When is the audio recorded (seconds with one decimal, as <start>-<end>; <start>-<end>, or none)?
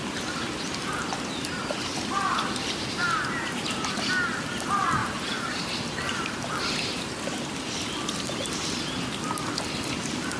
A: 0.0-1.6; 4.1-5.0; 5.6-10.4